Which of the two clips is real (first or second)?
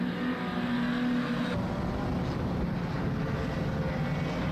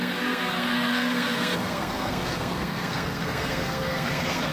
first